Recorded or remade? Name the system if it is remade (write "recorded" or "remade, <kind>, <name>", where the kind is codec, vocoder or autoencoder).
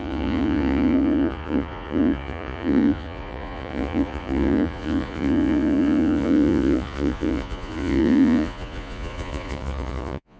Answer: remade, vocoder, Vocos